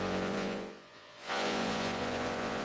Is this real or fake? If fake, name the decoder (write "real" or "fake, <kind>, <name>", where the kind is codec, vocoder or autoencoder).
fake, vocoder, Vocos